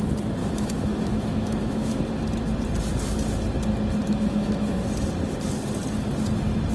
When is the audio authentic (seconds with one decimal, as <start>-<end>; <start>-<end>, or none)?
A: 0.0-0.4; 2.0-4.0; 4.8-6.7